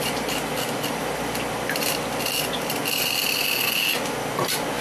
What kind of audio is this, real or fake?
real